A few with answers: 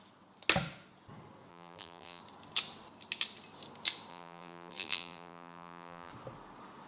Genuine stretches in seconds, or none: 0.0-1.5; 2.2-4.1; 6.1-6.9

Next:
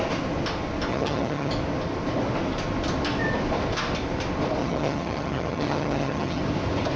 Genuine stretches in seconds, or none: 0.0-0.9; 1.5-4.6; 6.4-7.0

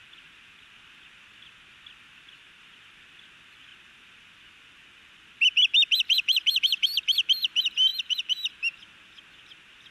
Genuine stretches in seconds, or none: 0.0-9.9

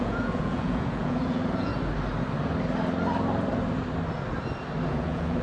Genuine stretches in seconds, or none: 1.7-4.9

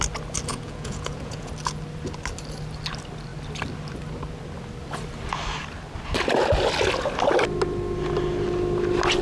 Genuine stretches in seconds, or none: 0.0-0.5; 1.5-9.2